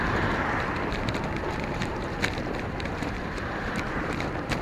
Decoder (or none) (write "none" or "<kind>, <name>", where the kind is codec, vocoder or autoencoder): vocoder, BigVGAN v2